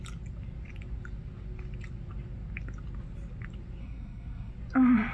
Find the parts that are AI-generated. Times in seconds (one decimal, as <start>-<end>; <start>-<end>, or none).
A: 3.8-4.5